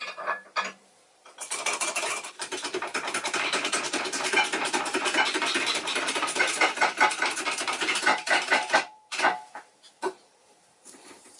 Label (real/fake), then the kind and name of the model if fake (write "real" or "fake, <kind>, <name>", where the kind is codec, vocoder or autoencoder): fake, vocoder, BigVGAN v2